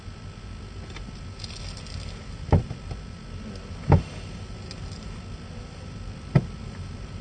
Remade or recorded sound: recorded